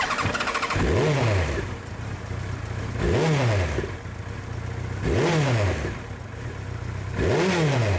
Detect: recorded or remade recorded